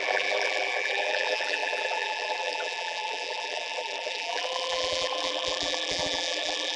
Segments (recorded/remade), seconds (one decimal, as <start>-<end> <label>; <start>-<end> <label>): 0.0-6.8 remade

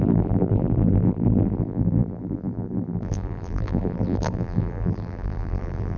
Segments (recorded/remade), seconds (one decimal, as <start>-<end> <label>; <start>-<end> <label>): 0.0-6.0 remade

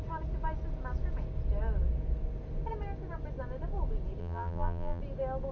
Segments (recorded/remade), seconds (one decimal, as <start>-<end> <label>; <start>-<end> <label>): 0.0-4.2 recorded; 4.2-5.0 remade; 5.0-5.5 recorded

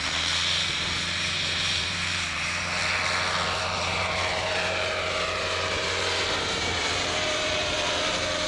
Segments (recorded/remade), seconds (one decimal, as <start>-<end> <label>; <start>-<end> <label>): 0.0-2.8 remade; 2.8-3.6 recorded; 3.6-8.5 remade

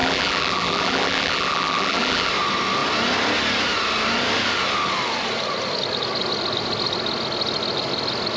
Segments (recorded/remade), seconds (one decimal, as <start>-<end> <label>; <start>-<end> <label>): 0.0-2.3 remade; 2.3-8.4 recorded

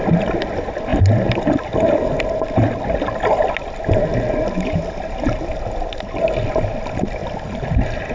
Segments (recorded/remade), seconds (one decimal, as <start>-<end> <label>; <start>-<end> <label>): 0.0-0.9 recorded; 0.9-3.5 remade; 3.5-8.1 recorded

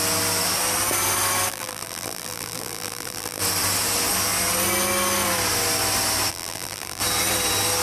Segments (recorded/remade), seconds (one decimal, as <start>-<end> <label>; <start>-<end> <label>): 0.0-1.5 recorded; 1.5-3.4 remade; 3.4-6.3 recorded; 6.3-7.0 remade; 7.0-7.8 recorded

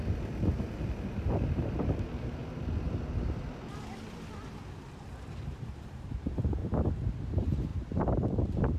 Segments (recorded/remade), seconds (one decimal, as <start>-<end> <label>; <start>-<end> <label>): 0.0-0.5 recorded; 0.5-2.4 remade; 2.4-5.3 recorded; 5.3-6.6 remade; 6.6-7.2 recorded; 7.2-8.8 remade